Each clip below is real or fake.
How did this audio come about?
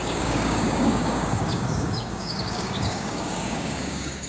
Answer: fake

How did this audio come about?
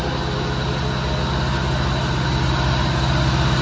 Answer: real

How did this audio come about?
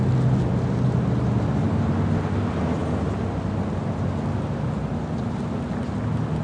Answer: real